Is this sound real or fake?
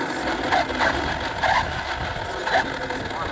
real